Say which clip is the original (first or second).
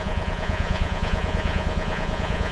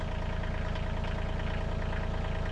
second